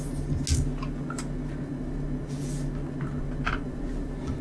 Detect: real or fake real